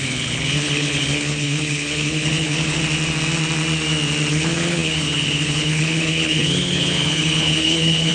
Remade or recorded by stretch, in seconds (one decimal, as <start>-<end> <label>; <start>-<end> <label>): 0.0-2.8 remade; 2.8-4.3 recorded; 4.3-8.1 remade